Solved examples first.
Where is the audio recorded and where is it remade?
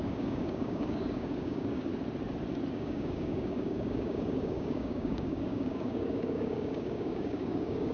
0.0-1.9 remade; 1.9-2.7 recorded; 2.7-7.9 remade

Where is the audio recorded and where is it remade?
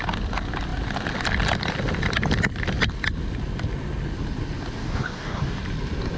0.0-4.8 recorded; 4.8-5.6 remade; 5.6-6.2 recorded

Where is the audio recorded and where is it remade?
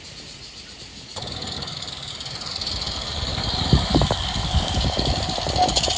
0.0-0.9 recorded; 0.9-2.1 remade; 2.1-3.3 recorded; 3.3-5.1 remade; 5.1-6.0 recorded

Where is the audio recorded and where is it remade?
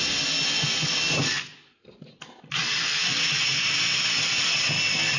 0.0-5.2 recorded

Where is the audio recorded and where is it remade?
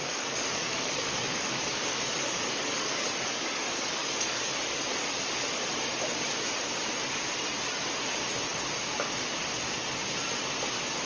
0.0-4.5 remade; 4.5-11.1 recorded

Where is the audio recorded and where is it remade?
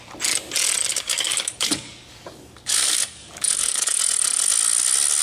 0.0-0.9 recorded; 0.9-4.0 remade; 4.0-5.2 recorded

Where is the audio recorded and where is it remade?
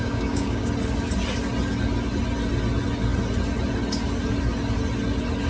0.0-0.7 remade; 0.7-5.5 recorded